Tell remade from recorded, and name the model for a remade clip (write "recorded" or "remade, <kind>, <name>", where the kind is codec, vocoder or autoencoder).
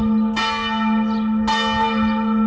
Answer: recorded